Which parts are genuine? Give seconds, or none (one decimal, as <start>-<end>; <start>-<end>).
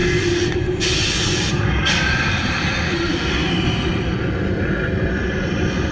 0.0-5.9